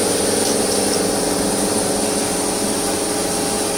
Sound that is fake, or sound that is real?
real